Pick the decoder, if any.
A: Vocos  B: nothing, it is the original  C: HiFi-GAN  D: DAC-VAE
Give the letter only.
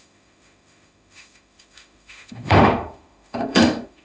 D